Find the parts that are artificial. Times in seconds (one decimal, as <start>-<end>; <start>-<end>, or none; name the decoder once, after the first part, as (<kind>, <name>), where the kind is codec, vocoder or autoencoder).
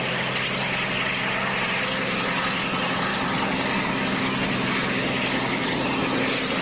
none